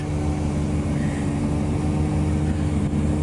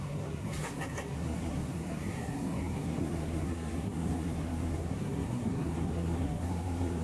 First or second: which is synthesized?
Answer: second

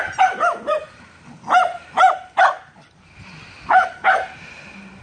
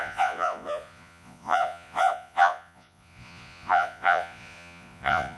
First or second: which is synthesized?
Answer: second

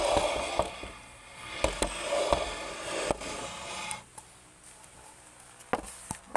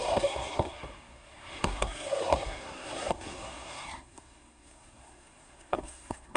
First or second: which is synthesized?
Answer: second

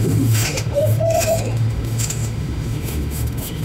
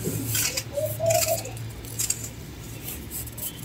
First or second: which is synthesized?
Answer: first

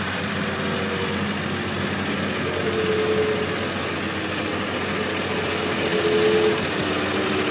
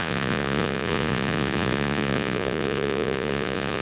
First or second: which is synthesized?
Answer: second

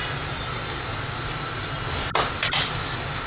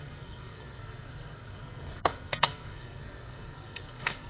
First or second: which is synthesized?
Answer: second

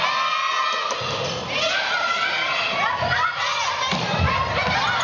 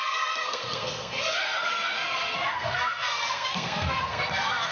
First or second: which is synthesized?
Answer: second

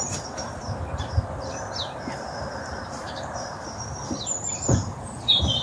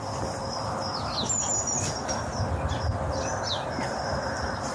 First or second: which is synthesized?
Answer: first